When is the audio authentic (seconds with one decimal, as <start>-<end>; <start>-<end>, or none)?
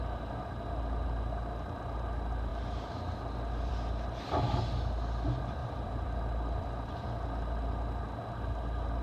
0.0-5.6; 7.0-9.0